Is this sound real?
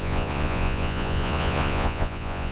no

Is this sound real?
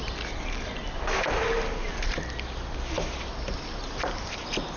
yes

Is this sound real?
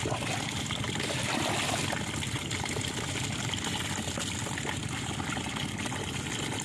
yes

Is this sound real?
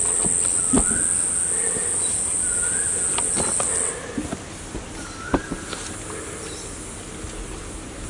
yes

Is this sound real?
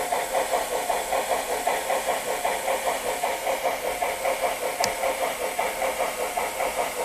yes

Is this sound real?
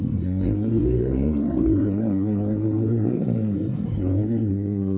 no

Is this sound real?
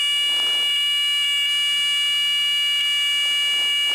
yes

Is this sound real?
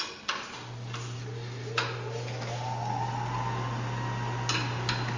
yes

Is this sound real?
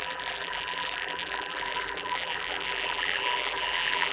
no